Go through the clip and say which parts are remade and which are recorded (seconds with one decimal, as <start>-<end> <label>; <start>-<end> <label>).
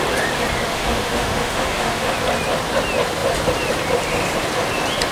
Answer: 0.0-0.7 recorded; 0.7-2.1 remade; 2.1-5.1 recorded